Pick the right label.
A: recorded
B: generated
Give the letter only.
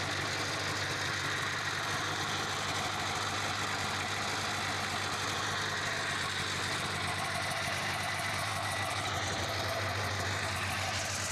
A